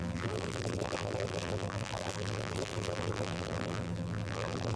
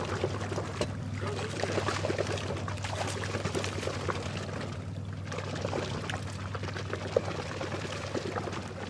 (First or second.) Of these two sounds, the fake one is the first